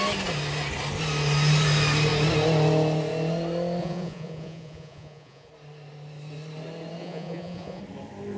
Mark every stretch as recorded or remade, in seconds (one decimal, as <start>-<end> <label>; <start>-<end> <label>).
0.0-3.8 recorded; 3.8-5.5 remade; 5.5-7.0 recorded; 7.0-7.8 remade; 7.8-8.4 recorded